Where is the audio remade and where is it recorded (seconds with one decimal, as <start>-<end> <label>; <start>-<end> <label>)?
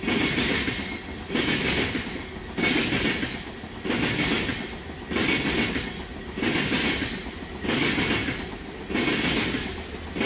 0.0-10.3 recorded